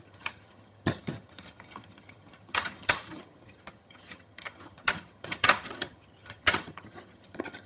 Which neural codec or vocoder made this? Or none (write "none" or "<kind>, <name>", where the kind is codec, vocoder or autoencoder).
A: vocoder, HiFi-GAN